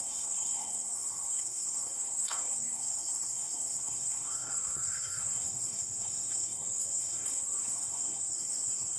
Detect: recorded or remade remade